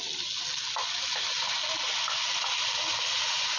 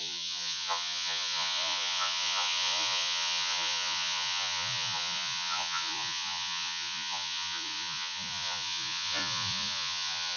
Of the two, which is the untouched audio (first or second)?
first